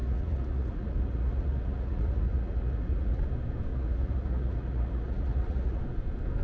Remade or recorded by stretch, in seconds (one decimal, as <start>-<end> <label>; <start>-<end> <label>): 0.0-3.2 remade; 3.2-3.7 recorded; 3.7-5.8 remade; 5.8-6.4 recorded